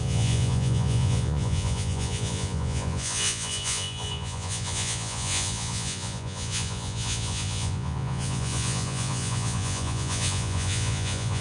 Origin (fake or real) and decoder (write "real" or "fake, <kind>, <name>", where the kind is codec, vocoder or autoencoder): fake, vocoder, Vocos